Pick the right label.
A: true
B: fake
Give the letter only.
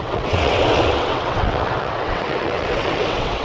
B